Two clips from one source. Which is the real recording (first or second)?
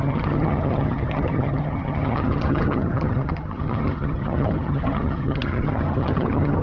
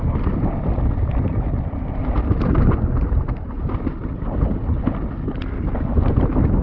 second